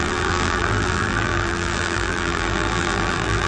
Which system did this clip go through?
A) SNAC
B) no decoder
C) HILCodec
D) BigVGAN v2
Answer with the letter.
D